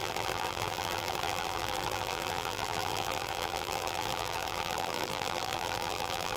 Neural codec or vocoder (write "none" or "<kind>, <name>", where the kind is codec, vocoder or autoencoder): vocoder, BigVGAN v2